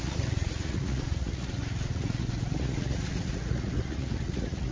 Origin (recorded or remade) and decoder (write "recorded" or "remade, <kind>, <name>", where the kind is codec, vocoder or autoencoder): remade, vocoder, Vocos